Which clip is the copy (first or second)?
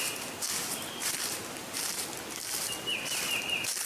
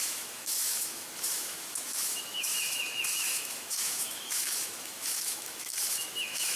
second